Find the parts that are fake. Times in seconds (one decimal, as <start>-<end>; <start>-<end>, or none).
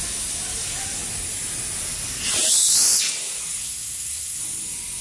3.6-4.4